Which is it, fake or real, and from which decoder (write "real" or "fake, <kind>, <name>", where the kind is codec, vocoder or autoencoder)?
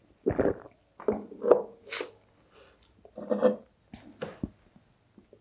real